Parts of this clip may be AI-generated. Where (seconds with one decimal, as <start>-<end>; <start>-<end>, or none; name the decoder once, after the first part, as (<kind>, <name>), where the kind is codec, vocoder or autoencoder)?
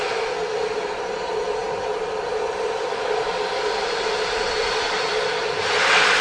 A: none